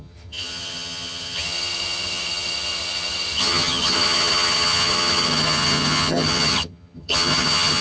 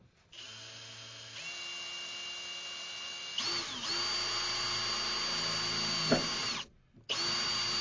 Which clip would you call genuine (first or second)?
second